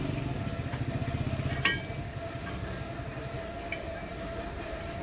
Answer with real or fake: real